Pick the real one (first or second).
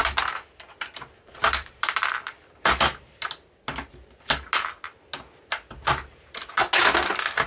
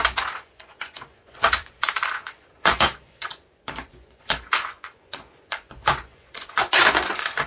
first